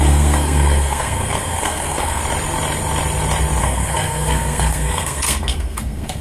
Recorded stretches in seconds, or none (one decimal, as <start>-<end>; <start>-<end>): 2.2-3.6